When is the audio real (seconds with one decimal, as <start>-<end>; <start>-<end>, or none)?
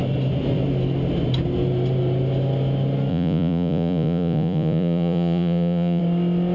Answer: 0.0-3.1; 6.0-6.5